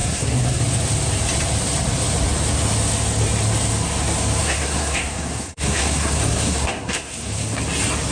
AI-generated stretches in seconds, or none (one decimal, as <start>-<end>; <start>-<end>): 0.0-0.6; 4.4-7.6